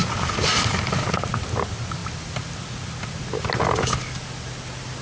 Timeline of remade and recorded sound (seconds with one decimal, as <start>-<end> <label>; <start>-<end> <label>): 0.0-5.0 recorded